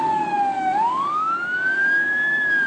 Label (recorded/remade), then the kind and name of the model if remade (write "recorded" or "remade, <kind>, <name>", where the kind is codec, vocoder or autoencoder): remade, codec, DAC